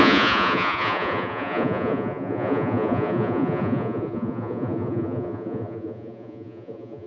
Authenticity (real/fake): fake